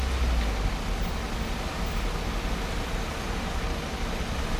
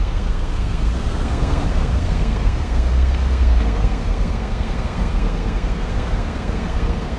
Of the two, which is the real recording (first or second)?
first